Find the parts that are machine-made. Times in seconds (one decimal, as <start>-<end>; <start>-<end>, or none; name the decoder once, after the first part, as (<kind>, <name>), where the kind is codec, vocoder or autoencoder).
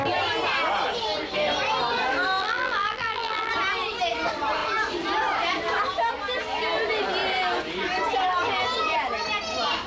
2.4-3.5 (vocoder, BigVGAN v2)